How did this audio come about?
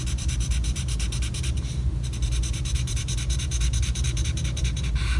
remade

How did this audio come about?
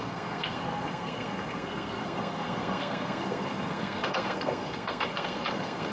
remade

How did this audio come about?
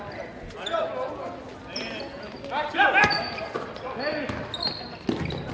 recorded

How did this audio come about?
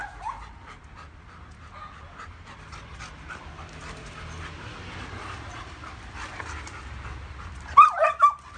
recorded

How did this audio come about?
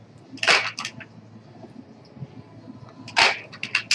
recorded